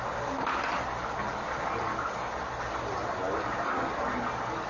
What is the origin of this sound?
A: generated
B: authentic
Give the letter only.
B